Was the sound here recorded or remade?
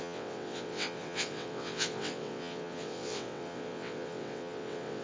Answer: remade